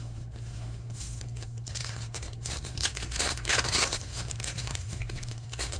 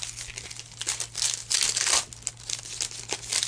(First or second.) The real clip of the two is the second